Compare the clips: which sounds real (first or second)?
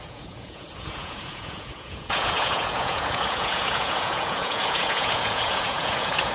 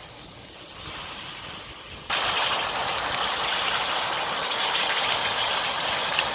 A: second